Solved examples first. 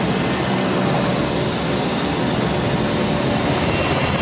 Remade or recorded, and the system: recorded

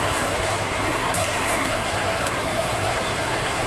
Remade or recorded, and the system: remade, codec, SNAC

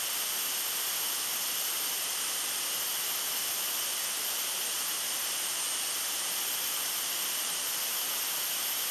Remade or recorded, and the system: recorded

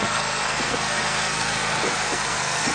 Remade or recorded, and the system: remade, codec, SNAC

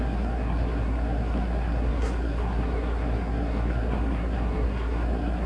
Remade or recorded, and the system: remade, codec, SNAC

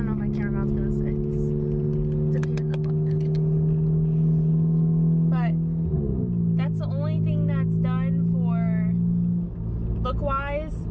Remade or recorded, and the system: recorded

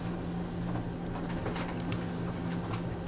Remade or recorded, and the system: recorded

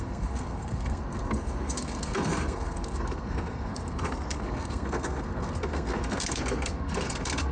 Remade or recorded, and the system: remade, codec, SNAC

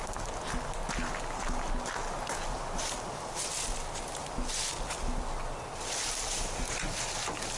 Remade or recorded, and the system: recorded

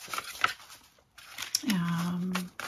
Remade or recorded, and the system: recorded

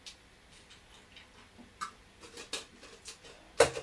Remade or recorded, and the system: recorded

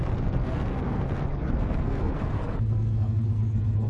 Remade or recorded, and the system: remade, codec, SNAC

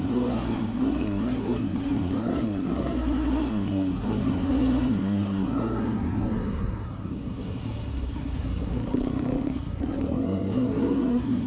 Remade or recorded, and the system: remade, codec, SNAC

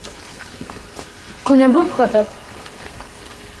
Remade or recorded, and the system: remade, codec, SNAC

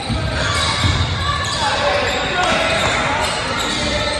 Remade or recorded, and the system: recorded